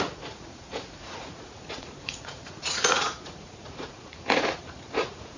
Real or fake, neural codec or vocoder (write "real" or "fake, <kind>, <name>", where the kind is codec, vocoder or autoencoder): fake, vocoder, Vocos